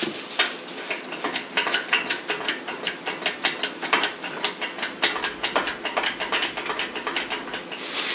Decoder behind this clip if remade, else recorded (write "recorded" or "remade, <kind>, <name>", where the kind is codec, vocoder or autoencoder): recorded